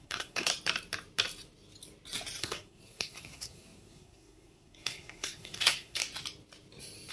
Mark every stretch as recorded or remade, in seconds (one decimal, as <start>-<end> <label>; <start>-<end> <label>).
0.0-0.5 remade; 0.5-2.4 recorded; 2.4-6.0 remade; 6.0-7.1 recorded